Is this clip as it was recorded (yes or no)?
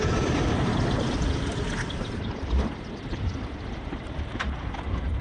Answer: no